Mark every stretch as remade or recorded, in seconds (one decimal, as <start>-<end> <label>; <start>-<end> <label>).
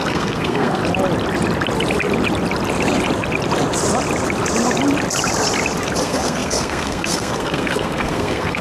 0.0-0.8 remade; 0.8-6.0 recorded; 6.0-8.6 remade